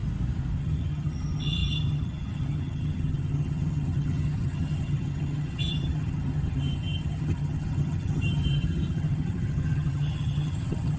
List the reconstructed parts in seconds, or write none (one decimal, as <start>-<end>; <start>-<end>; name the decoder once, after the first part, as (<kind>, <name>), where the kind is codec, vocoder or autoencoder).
0.6-11.0 (vocoder, HiFi-GAN)